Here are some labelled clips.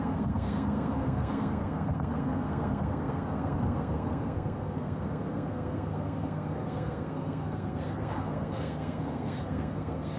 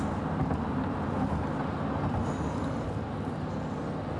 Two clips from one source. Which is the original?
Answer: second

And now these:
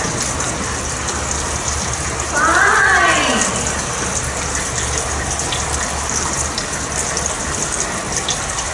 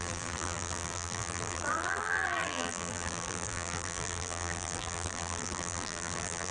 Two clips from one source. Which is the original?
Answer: first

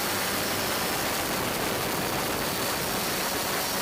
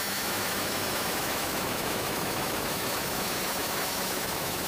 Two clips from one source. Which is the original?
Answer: first